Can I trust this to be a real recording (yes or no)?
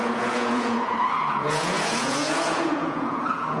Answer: no